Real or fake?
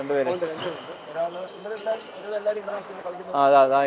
real